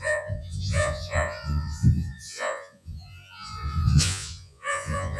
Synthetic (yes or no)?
yes